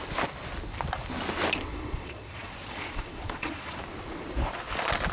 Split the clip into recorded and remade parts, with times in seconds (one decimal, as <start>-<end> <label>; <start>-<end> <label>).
0.0-1.7 recorded; 1.7-3.8 remade; 3.8-5.1 recorded

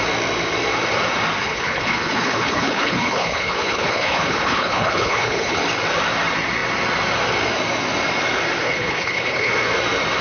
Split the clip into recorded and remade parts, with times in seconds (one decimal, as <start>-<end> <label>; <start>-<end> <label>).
0.0-1.4 recorded; 1.4-5.6 remade; 5.6-8.6 recorded; 8.6-9.5 remade; 9.5-10.2 recorded

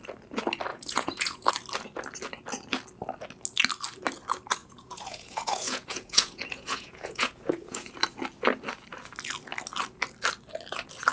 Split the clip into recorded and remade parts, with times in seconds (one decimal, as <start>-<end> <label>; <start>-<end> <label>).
0.0-0.7 recorded; 0.7-1.5 remade; 1.5-4.6 recorded; 4.6-7.9 remade; 7.9-11.1 recorded